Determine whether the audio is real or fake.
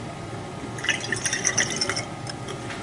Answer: real